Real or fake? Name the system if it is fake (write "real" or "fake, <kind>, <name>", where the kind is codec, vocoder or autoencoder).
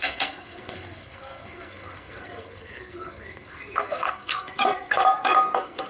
fake, codec, SNAC